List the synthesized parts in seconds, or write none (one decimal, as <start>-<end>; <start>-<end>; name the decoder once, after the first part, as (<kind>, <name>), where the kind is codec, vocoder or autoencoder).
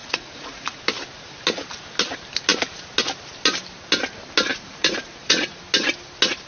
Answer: 0.0-0.8 (vocoder, Vocos); 4.5-5.6